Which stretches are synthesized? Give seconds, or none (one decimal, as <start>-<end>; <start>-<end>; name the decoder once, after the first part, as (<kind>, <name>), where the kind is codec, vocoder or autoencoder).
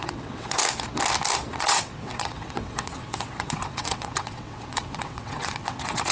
0.0-0.6 (vocoder, WaveNeXt); 1.5-6.1